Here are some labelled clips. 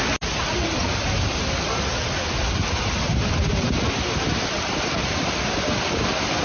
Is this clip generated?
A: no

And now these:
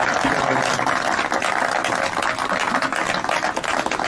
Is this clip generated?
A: no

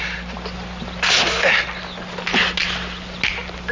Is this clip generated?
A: no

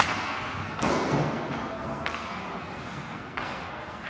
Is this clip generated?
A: yes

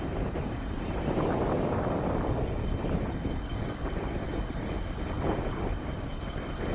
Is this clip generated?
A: no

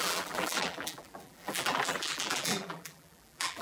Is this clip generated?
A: yes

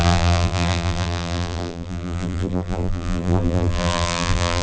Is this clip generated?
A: yes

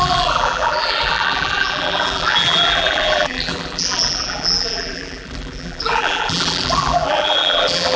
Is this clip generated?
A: yes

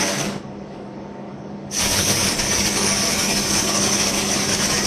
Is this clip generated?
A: yes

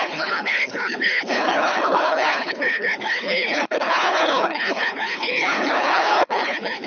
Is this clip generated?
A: yes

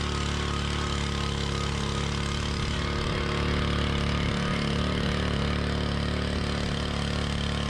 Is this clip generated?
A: no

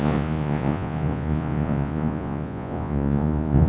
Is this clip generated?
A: yes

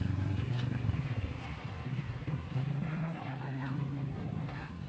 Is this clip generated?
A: yes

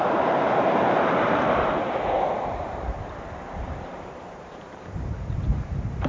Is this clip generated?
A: yes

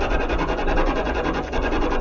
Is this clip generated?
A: yes